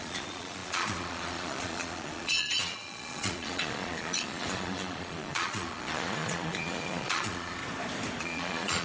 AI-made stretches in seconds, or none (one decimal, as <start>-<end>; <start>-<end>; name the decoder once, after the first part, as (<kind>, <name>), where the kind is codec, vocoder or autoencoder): 0.0-7.6 (vocoder, Vocos); 8.2-8.8